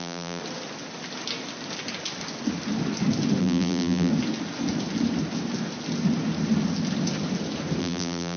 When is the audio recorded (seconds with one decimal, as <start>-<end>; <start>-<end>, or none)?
0.4-3.4; 4.1-7.8